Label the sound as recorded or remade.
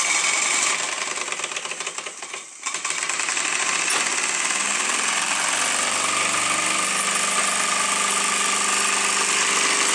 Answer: recorded